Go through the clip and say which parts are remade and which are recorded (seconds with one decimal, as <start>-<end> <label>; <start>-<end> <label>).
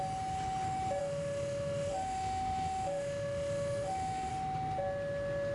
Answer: 0.0-1.0 recorded; 1.0-4.3 remade; 4.3-5.5 recorded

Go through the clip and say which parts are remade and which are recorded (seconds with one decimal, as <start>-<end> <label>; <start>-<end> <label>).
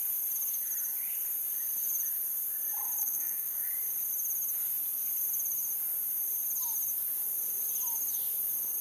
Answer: 0.0-3.0 recorded; 3.0-3.7 remade; 3.7-8.8 recorded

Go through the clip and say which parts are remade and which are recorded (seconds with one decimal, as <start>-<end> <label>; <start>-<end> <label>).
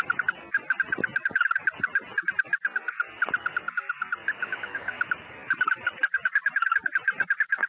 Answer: 0.0-4.4 recorded; 4.4-5.0 remade; 5.0-7.7 recorded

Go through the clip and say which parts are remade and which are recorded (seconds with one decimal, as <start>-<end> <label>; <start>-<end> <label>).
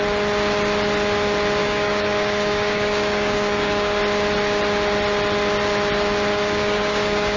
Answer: 0.0-1.6 recorded; 1.6-4.0 remade; 4.0-6.3 recorded; 6.3-7.4 remade